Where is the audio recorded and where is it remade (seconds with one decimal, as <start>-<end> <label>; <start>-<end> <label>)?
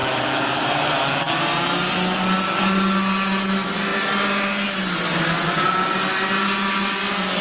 0.0-7.4 recorded